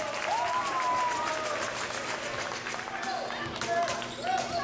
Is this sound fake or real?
real